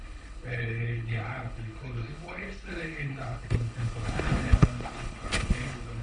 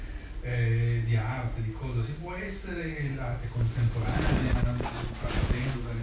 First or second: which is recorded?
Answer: second